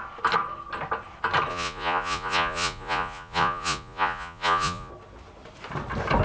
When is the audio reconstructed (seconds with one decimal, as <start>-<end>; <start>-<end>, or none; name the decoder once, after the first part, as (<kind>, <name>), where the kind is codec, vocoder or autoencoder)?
1.5-4.9 (vocoder, Vocos)